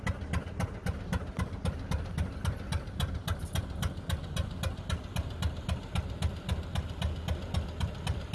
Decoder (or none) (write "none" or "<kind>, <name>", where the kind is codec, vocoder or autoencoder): none